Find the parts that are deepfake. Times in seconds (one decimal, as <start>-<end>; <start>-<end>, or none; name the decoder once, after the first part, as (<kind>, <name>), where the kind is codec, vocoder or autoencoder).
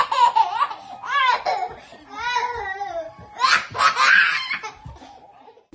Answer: 1.9-3.3 (vocoder, BigVGAN v2)